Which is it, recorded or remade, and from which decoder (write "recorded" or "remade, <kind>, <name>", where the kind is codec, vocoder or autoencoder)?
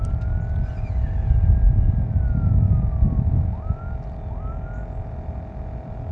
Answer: recorded